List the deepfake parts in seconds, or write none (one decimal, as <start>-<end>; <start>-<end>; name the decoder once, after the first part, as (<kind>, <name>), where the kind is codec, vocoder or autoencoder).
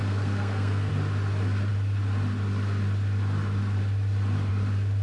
0.0-0.9 (codec, SNAC)